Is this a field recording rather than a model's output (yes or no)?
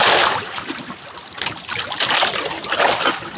yes